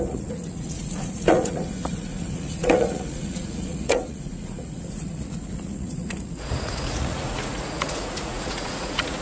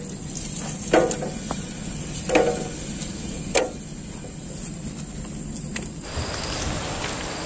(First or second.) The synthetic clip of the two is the first